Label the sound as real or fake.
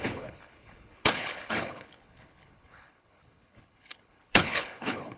fake